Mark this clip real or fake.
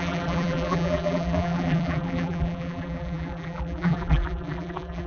fake